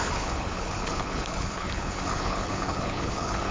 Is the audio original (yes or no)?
no